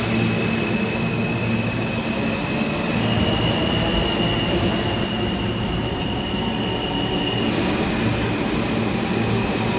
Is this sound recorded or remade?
recorded